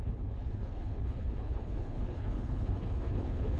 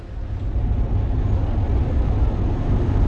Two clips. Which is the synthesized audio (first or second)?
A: first